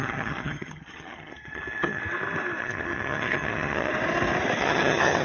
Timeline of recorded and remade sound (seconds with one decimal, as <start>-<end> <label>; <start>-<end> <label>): 0.0-2.0 remade; 2.0-2.6 recorded; 2.6-3.9 remade; 3.9-4.6 recorded; 4.6-5.2 remade